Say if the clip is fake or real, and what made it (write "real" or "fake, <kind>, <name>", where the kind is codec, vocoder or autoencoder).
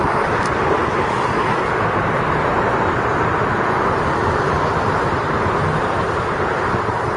real